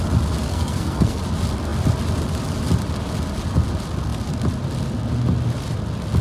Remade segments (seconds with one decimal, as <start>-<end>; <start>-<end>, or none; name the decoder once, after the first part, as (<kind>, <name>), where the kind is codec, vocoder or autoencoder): 0.5-1.2 (codec, SNAC)